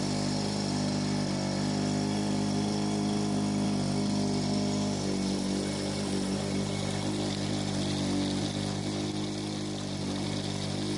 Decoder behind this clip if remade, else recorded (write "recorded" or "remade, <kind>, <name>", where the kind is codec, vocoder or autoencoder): recorded